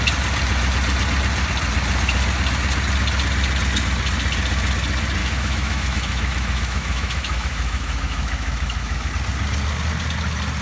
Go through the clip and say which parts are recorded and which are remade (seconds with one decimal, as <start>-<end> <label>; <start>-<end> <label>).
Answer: 0.0-5.2 recorded; 5.2-9.1 remade; 9.1-10.6 recorded